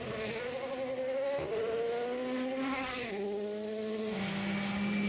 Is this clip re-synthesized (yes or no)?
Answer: no